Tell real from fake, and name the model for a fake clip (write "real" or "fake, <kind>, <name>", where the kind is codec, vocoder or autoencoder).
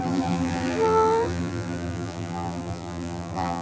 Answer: fake, vocoder, BigVGAN v2